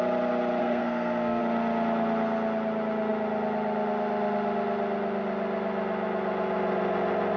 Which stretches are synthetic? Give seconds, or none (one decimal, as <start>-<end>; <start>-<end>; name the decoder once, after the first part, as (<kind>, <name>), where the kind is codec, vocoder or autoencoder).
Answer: 0.6-1.4 (codec, SNAC)